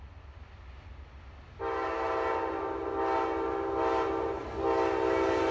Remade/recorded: recorded